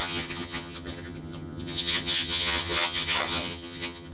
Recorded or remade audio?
remade